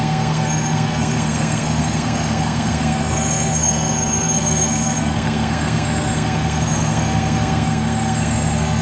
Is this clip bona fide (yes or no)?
no